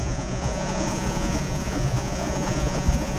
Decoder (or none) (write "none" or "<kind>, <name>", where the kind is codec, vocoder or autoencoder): vocoder, Vocos